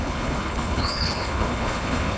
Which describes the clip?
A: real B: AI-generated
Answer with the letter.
B